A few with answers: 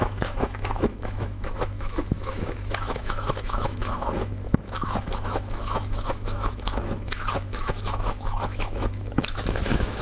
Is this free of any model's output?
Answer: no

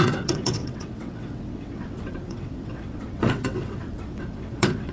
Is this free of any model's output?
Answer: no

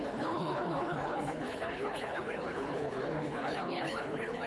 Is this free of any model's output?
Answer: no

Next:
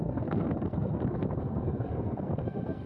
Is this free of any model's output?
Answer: no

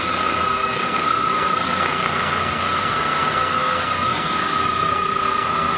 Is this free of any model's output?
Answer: no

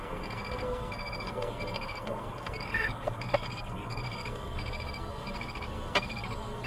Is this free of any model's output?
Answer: no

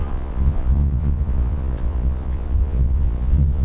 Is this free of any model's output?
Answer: no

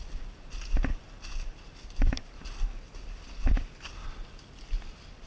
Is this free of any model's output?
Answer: yes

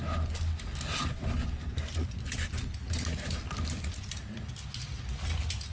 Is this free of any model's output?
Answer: yes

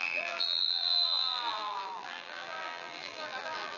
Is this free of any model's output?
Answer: no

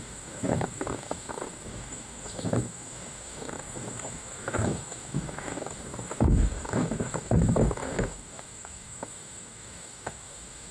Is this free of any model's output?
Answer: no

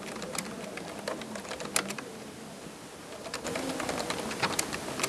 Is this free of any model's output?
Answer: yes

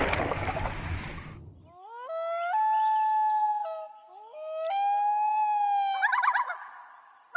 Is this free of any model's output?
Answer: yes